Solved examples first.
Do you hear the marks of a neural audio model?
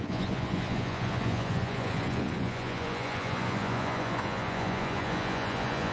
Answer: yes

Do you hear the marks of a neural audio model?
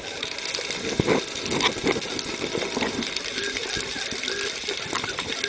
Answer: no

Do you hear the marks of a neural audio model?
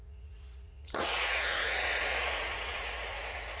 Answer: yes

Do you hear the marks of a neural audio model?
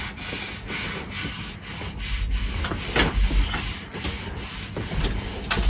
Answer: no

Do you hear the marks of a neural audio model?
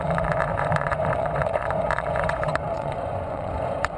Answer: yes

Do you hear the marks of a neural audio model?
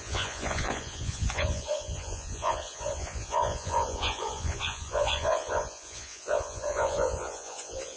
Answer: yes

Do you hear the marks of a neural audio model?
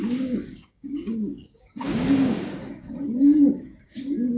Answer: yes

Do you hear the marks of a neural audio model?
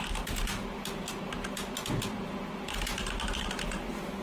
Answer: no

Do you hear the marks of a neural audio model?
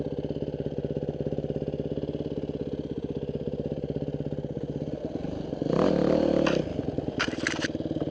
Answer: no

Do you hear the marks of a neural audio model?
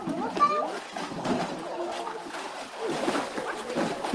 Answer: yes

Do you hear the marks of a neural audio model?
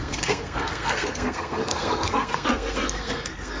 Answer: yes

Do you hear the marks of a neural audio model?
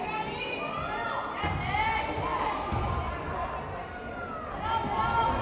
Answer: no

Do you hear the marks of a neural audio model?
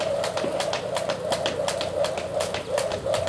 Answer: no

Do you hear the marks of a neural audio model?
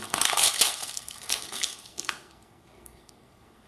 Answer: yes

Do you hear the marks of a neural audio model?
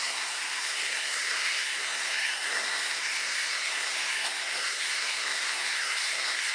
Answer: yes